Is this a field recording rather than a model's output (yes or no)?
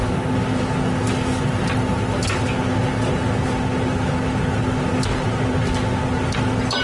yes